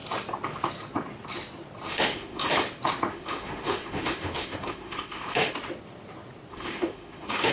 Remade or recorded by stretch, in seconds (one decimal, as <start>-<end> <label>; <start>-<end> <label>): 0.0-1.9 recorded; 1.9-2.5 remade; 2.5-3.1 recorded; 3.1-5.5 remade; 5.5-6.5 recorded; 6.5-7.5 remade